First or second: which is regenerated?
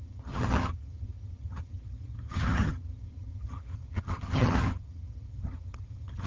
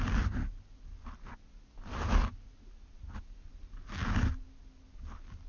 first